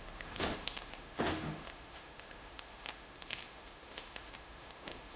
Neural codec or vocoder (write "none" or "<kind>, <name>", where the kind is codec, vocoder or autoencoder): autoencoder, DAC-VAE